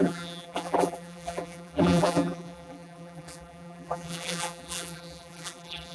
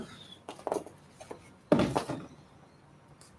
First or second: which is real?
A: second